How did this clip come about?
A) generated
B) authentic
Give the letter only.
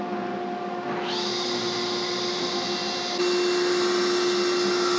B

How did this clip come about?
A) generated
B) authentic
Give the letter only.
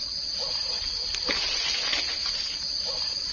B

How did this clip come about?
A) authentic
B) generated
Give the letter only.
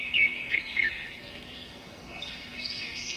B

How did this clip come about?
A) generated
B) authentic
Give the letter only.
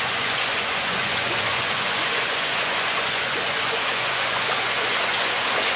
A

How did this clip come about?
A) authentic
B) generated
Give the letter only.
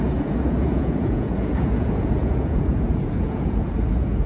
B